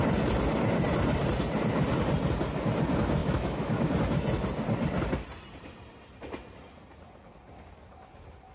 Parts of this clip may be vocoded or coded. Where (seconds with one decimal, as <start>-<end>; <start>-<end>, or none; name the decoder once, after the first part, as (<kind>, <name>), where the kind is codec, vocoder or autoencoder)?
3.2-3.8 (autoencoder, DAC-VAE)